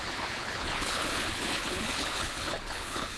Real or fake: fake